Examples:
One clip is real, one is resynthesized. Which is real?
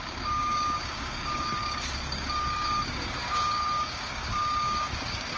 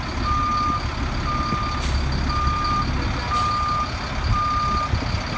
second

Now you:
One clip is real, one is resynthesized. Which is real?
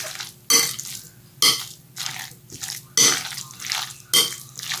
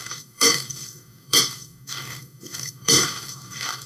first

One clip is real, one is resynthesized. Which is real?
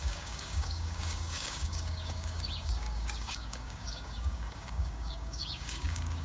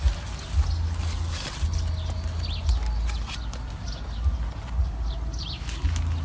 second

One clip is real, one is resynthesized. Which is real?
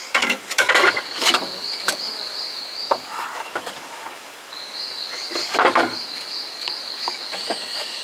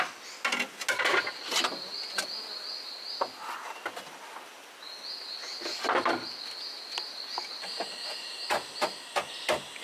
second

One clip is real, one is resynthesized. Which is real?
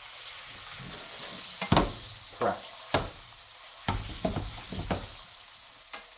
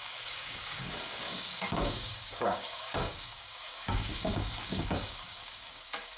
first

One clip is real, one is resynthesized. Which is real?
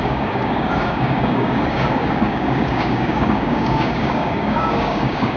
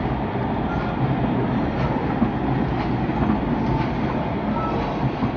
second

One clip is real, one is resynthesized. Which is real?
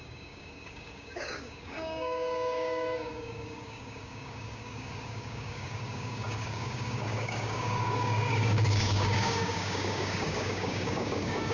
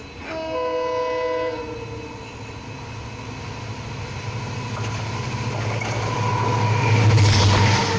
second